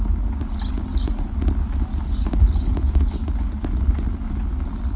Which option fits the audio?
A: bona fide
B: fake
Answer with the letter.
A